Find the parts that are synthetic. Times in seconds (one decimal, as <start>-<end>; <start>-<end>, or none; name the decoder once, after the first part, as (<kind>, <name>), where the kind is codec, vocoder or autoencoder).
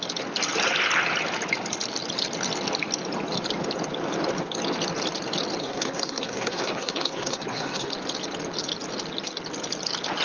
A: 5.6-7.9 (codec, SNAC)